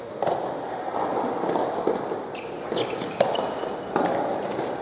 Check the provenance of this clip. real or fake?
real